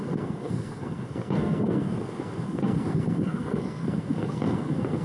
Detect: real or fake fake